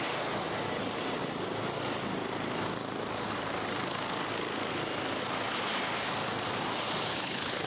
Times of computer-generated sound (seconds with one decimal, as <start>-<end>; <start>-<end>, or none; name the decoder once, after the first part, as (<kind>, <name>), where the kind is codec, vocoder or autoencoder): 7.1-7.7 (codec, HILCodec)